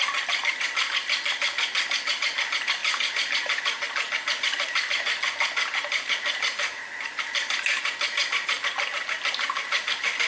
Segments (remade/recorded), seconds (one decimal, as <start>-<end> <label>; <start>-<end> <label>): 0.0-10.3 recorded